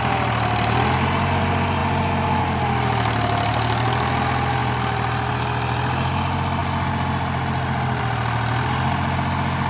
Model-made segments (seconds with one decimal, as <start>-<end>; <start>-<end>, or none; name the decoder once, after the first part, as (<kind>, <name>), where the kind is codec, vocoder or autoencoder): none